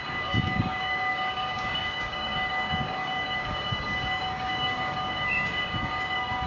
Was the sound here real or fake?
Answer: fake